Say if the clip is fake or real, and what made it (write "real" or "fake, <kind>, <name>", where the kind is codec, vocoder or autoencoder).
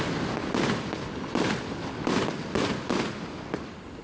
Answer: real